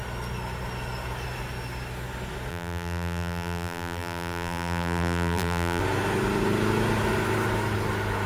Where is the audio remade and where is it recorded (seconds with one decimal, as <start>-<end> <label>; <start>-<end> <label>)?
0.0-2.5 recorded; 2.5-5.8 remade; 5.8-8.3 recorded